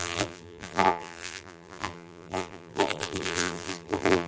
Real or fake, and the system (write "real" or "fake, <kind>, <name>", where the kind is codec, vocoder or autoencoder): fake, vocoder, BigVGAN v2